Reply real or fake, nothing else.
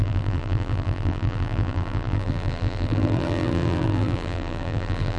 fake